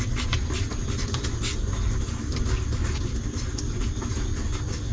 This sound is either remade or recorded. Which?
recorded